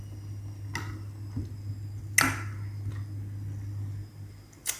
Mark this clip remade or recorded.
recorded